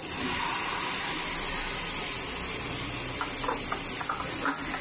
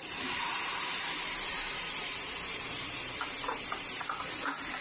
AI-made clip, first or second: second